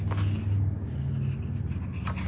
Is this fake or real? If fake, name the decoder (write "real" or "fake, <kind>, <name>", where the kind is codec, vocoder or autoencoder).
real